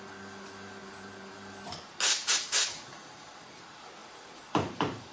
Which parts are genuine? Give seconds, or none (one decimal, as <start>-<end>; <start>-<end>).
0.0-0.8; 1.8-2.2; 3.6-4.0